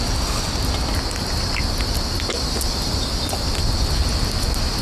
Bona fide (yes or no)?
yes